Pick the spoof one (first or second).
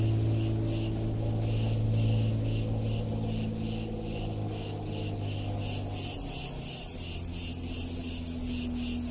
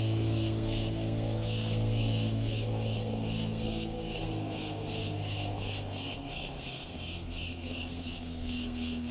second